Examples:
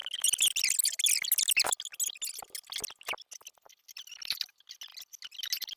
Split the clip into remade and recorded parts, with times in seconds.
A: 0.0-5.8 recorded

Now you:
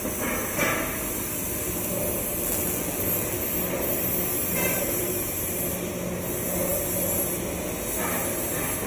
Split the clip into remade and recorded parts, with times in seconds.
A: 0.0-4.4 recorded; 4.4-5.6 remade; 5.6-8.9 recorded

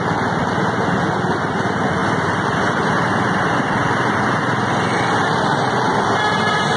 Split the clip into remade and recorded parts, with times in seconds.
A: 0.0-6.8 recorded

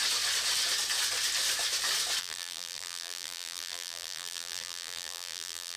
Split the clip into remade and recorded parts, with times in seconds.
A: 0.0-2.2 recorded; 2.2-5.8 remade